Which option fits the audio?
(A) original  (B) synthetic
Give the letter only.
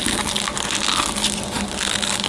A